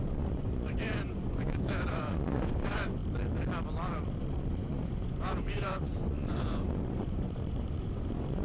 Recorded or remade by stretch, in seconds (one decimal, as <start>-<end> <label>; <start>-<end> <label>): 0.0-3.0 remade; 3.0-4.2 recorded; 4.2-8.4 remade